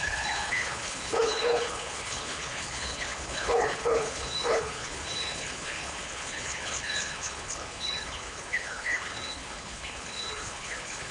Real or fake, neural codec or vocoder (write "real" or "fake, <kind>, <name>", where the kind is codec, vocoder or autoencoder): fake, codec, HILCodec